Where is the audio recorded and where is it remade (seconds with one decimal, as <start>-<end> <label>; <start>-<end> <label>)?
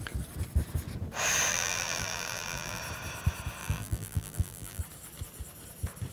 0.0-1.5 recorded; 1.5-2.8 remade; 2.8-3.6 recorded; 3.6-4.8 remade; 4.8-6.1 recorded